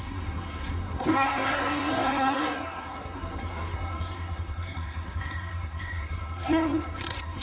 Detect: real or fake fake